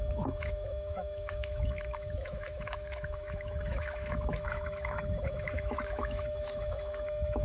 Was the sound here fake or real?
fake